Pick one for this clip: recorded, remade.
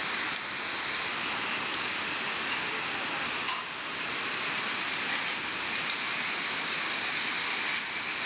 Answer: recorded